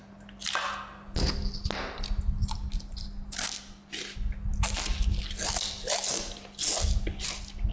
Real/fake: real